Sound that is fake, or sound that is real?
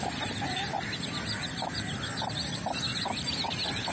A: real